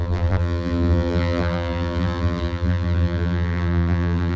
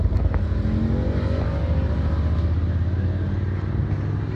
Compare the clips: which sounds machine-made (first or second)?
first